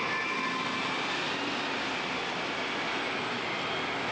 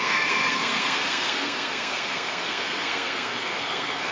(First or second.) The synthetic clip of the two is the second